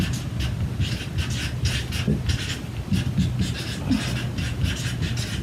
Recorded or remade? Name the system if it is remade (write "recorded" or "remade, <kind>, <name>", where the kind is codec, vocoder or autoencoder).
recorded